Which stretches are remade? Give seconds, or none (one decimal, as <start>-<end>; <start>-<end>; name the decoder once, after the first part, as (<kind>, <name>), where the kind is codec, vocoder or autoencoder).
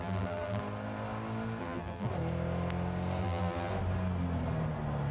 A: 0.0-0.6 (vocoder, BigVGAN v2); 1.6-2.1; 3.2-3.7